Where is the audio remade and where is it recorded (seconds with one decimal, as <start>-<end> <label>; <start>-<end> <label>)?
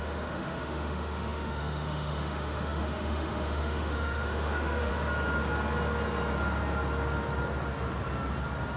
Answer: 0.0-4.9 remade; 4.9-8.8 recorded